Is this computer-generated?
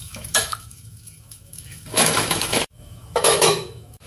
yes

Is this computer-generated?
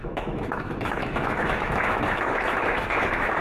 yes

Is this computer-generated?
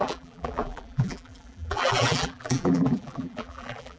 yes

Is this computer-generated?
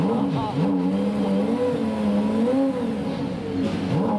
no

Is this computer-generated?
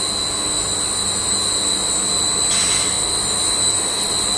no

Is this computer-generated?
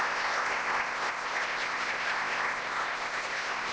yes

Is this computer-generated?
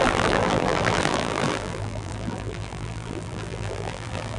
yes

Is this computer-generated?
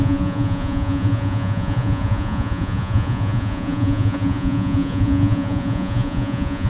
yes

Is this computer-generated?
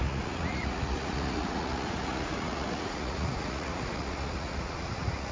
yes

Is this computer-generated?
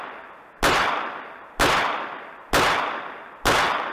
no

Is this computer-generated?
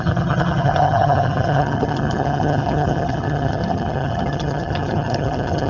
yes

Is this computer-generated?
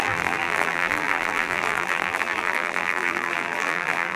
yes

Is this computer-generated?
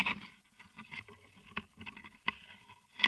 no